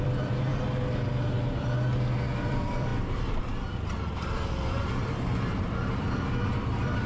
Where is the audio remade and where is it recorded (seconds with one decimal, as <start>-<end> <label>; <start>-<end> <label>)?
0.0-0.5 remade; 0.5-2.5 recorded; 2.5-7.1 remade